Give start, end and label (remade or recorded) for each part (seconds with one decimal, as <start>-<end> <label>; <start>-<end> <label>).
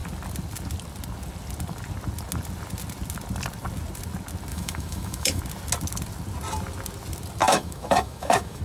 0.0-4.5 recorded; 4.5-5.4 remade; 5.4-7.4 recorded; 7.4-8.6 remade